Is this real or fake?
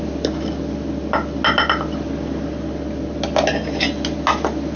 real